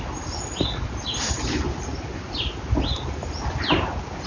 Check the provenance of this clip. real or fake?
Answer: real